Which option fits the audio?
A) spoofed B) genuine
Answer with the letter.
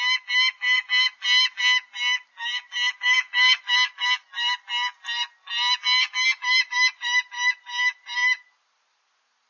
B